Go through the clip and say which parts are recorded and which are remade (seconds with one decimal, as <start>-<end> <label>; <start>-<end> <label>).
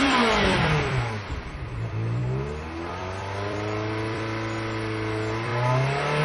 0.0-2.2 remade; 2.2-2.9 recorded; 2.9-5.5 remade; 5.5-6.2 recorded